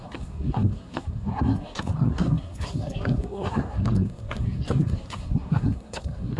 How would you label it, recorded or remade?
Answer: remade